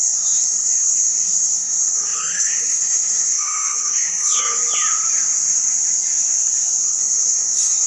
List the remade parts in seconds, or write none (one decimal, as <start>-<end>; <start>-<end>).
0.0-4.6; 6.8-7.9